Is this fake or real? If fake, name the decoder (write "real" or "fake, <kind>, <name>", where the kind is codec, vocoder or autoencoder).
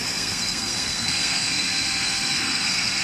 fake, codec, SNAC